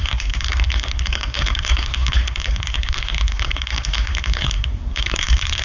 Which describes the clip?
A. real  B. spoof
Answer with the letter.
B